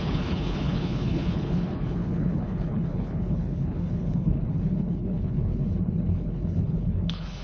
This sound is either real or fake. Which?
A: fake